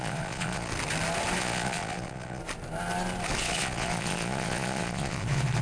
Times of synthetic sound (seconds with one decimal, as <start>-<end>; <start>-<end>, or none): 0.0-0.7; 1.4-2.4; 3.4-5.6